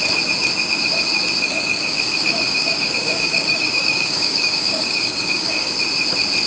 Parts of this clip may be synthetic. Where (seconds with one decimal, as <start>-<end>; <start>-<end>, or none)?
1.8-5.7